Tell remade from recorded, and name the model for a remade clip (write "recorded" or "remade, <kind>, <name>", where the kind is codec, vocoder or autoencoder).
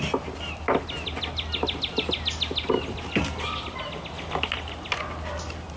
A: recorded